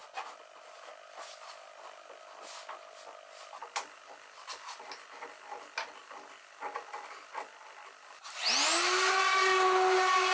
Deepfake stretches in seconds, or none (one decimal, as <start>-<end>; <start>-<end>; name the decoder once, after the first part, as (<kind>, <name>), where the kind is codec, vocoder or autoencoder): none